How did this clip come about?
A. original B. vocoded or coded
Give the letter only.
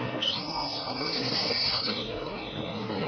B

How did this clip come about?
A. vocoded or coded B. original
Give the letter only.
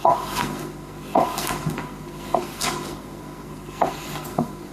A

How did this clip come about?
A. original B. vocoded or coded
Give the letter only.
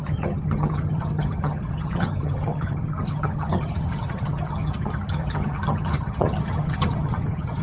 B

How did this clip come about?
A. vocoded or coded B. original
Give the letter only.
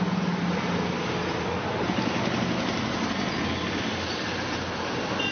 B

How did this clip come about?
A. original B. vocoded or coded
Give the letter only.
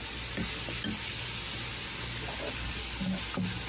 A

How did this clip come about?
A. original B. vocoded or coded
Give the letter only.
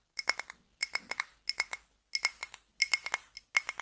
A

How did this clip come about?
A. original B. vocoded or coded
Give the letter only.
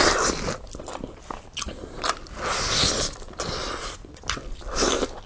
A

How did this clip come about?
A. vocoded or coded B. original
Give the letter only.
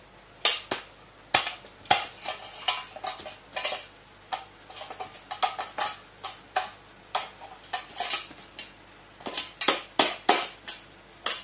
B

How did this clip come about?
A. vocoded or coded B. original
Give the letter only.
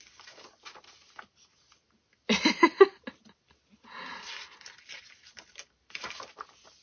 B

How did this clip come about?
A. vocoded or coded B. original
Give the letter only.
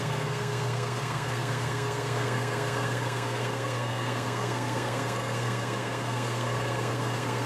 A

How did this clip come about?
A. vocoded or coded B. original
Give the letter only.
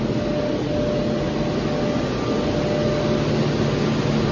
B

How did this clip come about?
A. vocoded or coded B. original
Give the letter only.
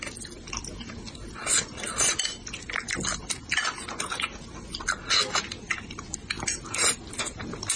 B